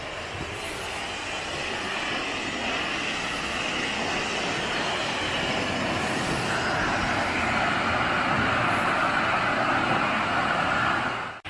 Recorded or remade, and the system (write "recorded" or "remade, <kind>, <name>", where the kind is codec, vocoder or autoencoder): recorded